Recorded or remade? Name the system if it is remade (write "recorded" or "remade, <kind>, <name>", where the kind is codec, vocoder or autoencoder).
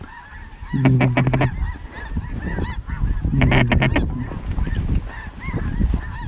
recorded